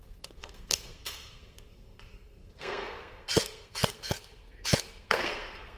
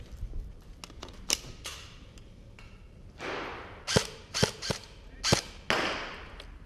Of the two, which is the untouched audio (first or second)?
second